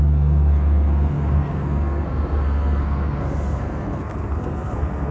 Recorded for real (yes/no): no